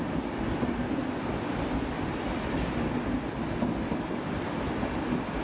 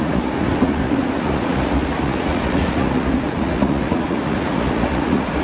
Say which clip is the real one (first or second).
first